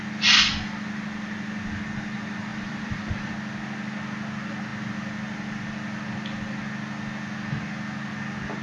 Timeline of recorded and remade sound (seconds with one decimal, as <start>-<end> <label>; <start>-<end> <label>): 0.0-2.5 recorded; 2.5-3.3 remade; 3.3-8.6 recorded